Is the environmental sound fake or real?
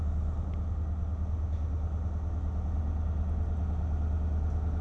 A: real